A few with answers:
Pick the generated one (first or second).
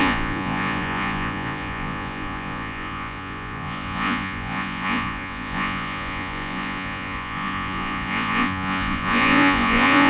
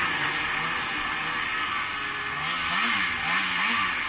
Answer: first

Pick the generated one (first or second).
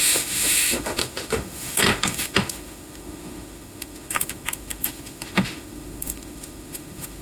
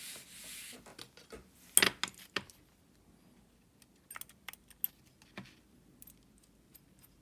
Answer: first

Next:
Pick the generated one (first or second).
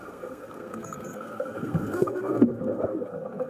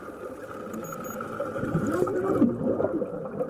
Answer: first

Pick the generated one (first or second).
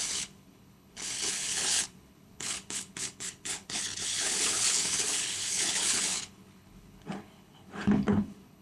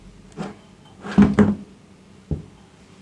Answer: first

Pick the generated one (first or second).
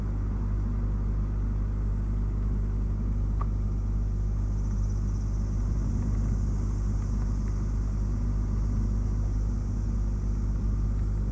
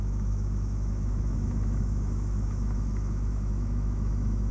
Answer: second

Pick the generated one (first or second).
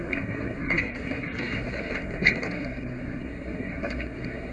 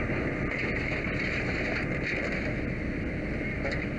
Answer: first